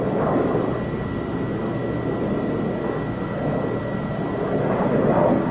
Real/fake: real